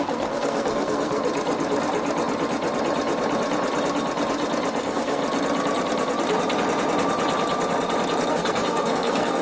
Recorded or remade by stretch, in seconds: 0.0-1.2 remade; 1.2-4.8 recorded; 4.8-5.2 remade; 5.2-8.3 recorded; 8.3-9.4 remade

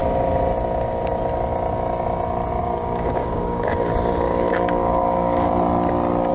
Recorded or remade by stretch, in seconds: 0.0-2.6 recorded; 2.6-3.9 remade; 3.9-4.5 recorded; 4.5-5.5 remade; 5.5-6.3 recorded

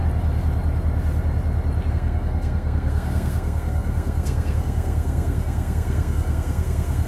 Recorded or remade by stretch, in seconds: 0.0-1.9 recorded; 1.9-7.1 remade

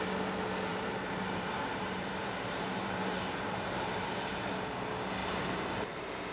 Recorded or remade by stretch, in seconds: 0.0-0.7 recorded; 0.7-4.5 remade; 4.5-5.2 recorded; 5.2-6.3 remade